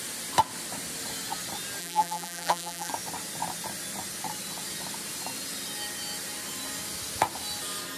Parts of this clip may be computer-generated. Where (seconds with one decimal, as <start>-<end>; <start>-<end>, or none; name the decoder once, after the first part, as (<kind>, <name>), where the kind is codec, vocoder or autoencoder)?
1.8-2.9 (vocoder, BigVGAN v2)